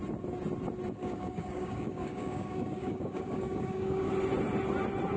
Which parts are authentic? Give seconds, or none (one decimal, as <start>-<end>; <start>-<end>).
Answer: 0.0-1.0; 4.1-5.2